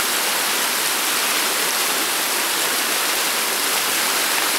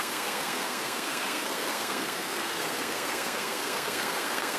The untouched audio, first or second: first